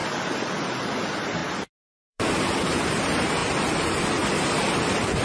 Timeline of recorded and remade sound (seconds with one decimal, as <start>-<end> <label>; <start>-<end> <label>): 0.0-3.4 remade; 3.4-4.4 recorded; 4.4-5.2 remade